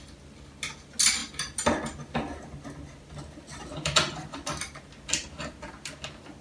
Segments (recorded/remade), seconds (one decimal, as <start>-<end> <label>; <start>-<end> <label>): 0.0-6.4 recorded